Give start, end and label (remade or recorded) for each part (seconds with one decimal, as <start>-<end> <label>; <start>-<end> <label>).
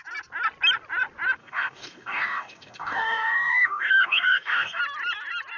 0.0-1.4 recorded; 1.4-4.8 remade; 4.8-5.6 recorded